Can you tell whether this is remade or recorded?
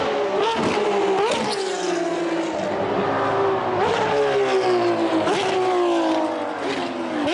recorded